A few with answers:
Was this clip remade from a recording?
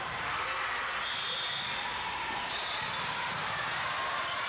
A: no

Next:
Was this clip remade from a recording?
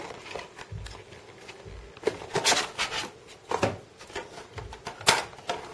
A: no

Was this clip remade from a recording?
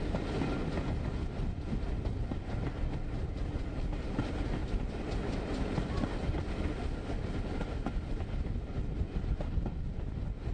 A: no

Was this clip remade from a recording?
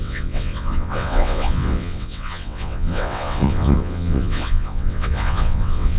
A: yes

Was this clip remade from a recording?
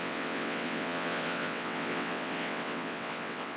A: yes